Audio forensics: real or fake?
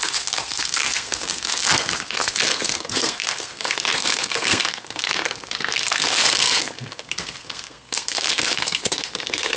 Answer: fake